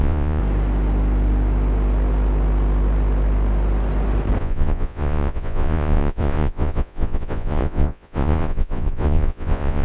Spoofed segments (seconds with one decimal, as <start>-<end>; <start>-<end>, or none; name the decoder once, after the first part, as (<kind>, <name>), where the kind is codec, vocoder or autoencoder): 0.0-0.4 (vocoder, Vocos); 4.4-9.8